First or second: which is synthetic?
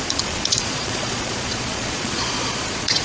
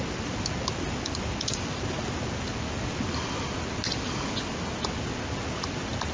first